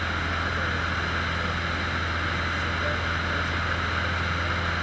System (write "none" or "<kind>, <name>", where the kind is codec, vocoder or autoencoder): none